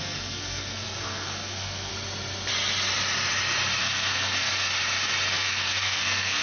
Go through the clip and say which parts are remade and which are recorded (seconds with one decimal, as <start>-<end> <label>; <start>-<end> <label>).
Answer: 0.0-1.9 remade; 1.9-3.8 recorded; 3.8-4.7 remade; 4.7-5.3 recorded; 5.3-6.4 remade